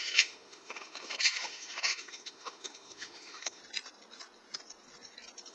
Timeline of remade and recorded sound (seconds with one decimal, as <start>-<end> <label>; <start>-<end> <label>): 0.0-3.6 remade; 3.6-5.5 recorded